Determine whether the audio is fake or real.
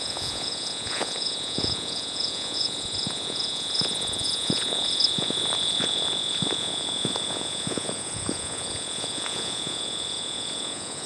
fake